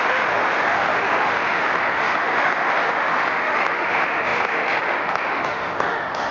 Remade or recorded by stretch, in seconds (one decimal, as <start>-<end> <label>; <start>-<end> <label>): 0.0-6.3 remade